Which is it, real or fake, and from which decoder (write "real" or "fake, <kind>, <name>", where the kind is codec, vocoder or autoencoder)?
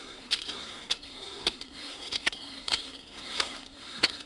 fake, codec, SNAC